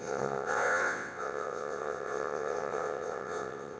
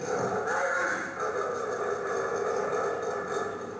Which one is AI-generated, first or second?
first